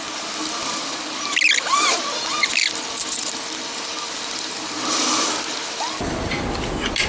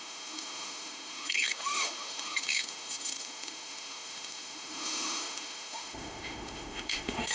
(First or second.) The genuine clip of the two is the first